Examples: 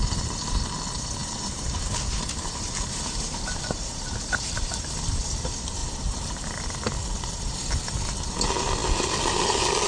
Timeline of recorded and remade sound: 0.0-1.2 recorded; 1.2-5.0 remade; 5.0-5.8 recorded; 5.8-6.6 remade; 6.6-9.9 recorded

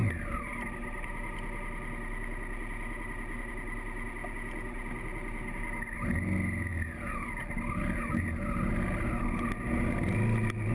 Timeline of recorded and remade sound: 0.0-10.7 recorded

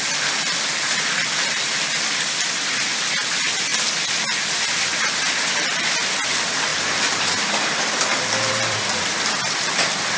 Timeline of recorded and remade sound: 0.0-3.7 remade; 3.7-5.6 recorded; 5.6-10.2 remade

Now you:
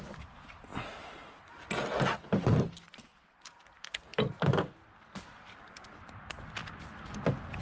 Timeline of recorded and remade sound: 0.0-7.6 recorded

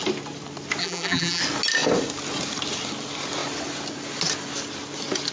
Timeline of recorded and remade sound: 0.0-0.8 recorded; 0.8-1.4 remade; 1.4-5.3 recorded